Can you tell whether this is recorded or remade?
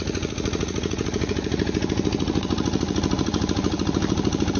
remade